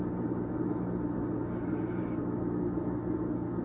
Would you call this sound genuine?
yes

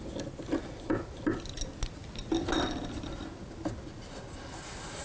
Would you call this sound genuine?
yes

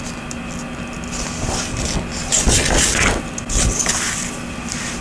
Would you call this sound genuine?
yes